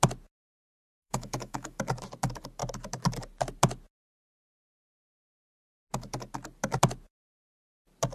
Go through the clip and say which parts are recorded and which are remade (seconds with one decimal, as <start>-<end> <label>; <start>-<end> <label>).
0.0-1.0 recorded; 1.0-1.8 remade; 1.8-8.1 recorded